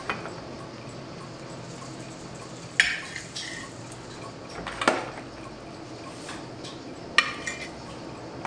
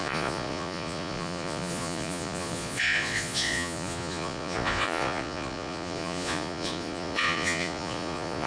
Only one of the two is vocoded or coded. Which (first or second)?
second